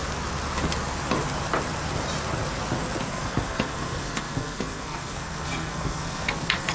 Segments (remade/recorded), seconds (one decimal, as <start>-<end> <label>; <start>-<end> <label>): 0.0-3.1 recorded; 3.1-6.7 remade